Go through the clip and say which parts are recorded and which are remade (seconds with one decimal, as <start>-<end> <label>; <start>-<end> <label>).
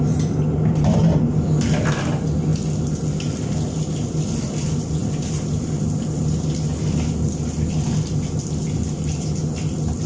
0.0-10.1 recorded